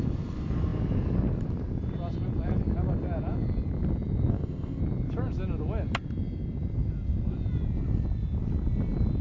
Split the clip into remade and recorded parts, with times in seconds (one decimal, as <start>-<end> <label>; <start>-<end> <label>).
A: 0.0-4.3 recorded; 4.3-4.8 remade; 4.8-9.2 recorded